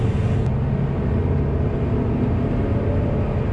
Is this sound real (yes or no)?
yes